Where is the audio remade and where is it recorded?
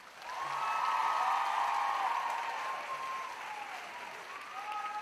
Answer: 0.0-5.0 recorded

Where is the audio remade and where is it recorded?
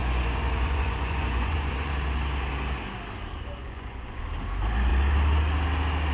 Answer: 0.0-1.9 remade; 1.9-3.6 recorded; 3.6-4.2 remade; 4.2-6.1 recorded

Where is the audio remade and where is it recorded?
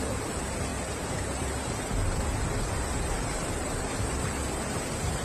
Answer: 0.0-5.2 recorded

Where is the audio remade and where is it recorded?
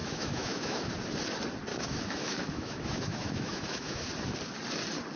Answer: 0.0-0.9 remade; 0.9-1.7 recorded; 1.7-4.0 remade; 4.0-5.2 recorded